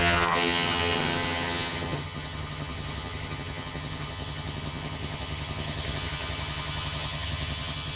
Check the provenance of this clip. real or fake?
fake